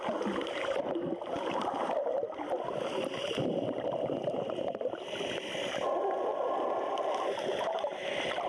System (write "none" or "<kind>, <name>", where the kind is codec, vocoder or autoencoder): none